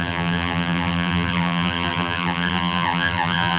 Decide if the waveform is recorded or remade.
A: remade